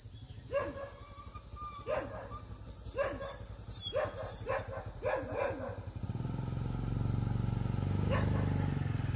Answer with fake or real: real